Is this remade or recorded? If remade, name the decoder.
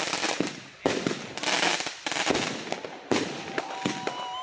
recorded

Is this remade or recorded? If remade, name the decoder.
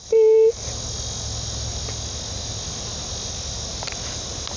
recorded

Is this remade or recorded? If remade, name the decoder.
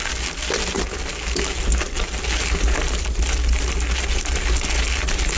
recorded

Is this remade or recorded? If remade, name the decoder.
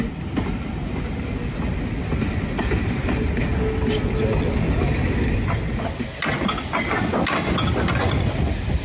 recorded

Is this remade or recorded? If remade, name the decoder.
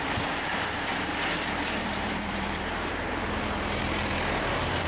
remade, vocoder, BigVGAN v2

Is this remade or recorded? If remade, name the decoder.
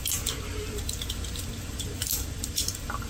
recorded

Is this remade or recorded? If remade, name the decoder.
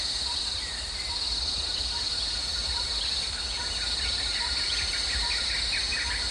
recorded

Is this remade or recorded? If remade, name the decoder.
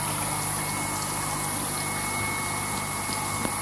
recorded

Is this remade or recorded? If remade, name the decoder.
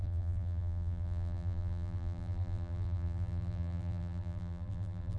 remade, vocoder, BigVGAN v2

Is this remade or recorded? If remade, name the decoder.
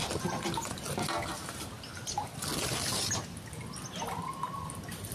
recorded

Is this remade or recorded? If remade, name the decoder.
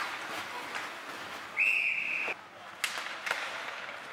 recorded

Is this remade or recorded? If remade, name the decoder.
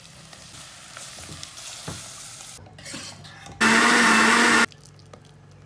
recorded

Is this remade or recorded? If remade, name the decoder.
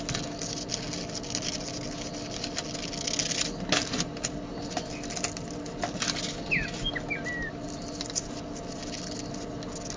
recorded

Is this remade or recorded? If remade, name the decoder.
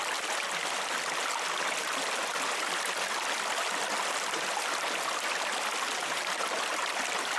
recorded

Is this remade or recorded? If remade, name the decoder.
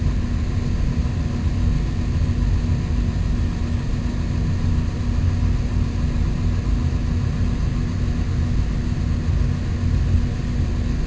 recorded